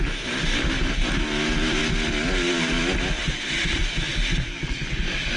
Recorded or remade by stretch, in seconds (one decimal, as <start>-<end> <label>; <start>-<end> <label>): 0.0-1.8 remade; 1.8-3.2 recorded; 3.2-3.8 remade; 3.8-4.7 recorded; 4.7-5.4 remade